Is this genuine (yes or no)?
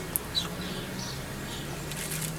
yes